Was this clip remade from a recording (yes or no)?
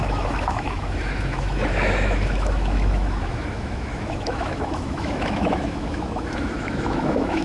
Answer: yes